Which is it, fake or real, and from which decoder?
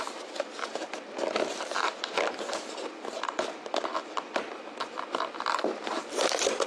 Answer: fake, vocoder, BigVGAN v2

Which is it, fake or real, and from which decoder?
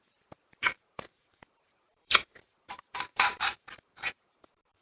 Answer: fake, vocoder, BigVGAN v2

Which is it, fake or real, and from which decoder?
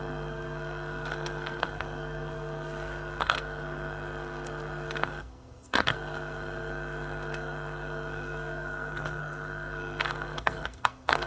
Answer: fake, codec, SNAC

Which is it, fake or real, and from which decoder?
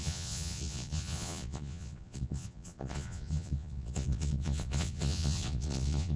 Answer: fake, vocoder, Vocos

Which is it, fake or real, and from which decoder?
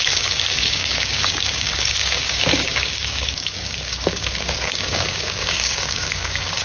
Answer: fake, codec, DAC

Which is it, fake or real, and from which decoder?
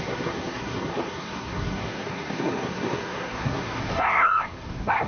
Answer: fake, codec, SNAC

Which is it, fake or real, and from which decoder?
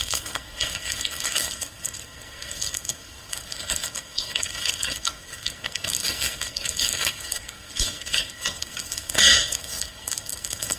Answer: fake, codec, SNAC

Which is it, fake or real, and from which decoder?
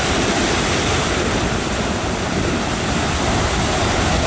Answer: real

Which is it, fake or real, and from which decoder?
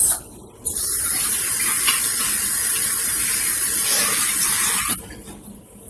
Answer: fake, vocoder, BigVGAN v2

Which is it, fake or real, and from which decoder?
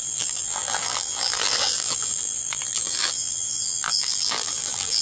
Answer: fake, vocoder, BigVGAN v2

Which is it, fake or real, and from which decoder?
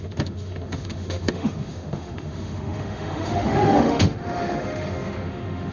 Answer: fake, autoencoder, DAC-VAE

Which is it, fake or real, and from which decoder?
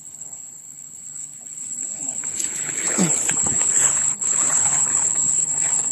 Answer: fake, codec, HILCodec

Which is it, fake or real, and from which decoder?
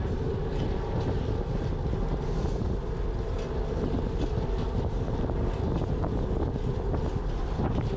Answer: real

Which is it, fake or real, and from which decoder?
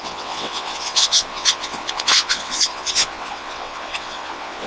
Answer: fake, vocoder, WaveNeXt